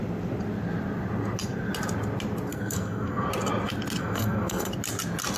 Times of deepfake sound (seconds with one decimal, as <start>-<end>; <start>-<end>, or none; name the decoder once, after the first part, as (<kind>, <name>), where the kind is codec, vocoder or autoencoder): 2.5-3.3 (codec, SNAC); 4.0-4.7